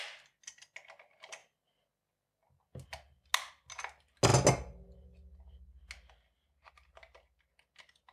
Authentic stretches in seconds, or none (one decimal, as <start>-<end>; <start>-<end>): 0.0-8.1